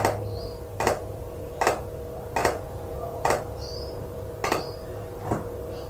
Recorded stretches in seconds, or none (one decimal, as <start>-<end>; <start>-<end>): 0.0-2.4; 3.3-5.9